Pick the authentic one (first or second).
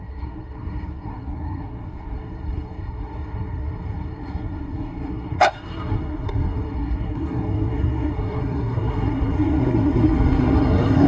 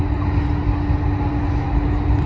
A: second